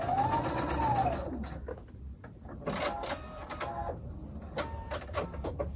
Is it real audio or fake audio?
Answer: real